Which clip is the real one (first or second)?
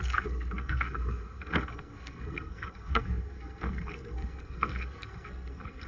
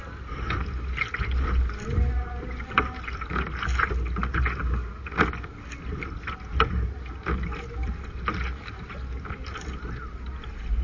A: second